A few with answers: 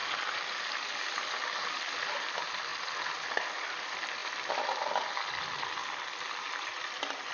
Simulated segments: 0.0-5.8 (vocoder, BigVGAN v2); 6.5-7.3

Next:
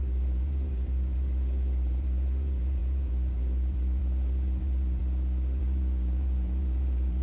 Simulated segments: 0.0-5.0 (vocoder, BigVGAN v2); 5.6-7.2

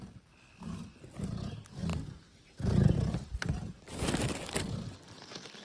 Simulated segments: none

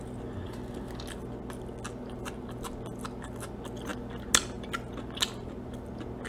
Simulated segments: none

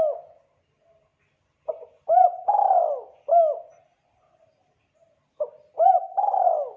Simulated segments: none

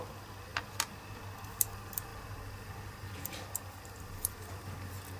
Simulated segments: none

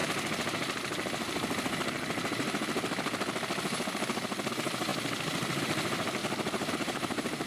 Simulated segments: 4.5-4.9 (vocoder, BigVGAN v2); 5.6-6.2; 6.7-7.5